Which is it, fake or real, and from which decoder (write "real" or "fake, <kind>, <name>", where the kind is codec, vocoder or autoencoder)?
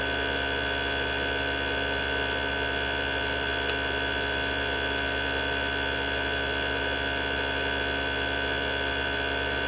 real